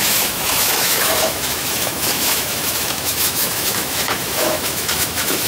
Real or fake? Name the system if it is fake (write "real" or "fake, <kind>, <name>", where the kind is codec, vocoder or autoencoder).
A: fake, autoencoder, DAC-VAE